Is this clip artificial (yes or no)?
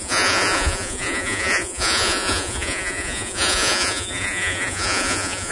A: yes